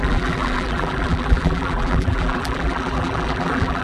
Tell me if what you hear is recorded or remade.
remade